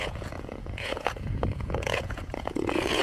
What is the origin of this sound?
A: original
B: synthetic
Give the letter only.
B